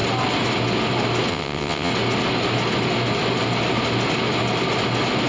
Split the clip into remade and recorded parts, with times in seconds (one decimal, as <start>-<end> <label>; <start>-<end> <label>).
0.0-1.3 recorded; 1.3-1.9 remade; 1.9-5.3 recorded

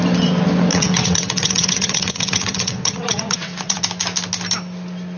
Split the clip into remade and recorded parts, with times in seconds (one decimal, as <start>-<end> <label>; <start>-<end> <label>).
0.0-0.7 recorded; 0.7-3.8 remade; 3.8-5.2 recorded

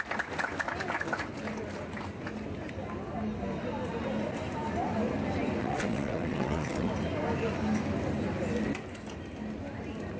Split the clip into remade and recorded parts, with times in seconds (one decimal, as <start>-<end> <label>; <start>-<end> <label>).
0.0-5.6 recorded; 5.6-6.9 remade; 6.9-10.2 recorded

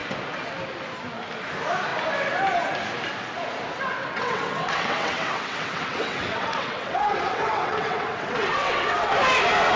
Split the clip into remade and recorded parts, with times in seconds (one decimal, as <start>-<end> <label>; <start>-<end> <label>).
0.0-4.0 recorded; 4.0-9.1 remade; 9.1-9.8 recorded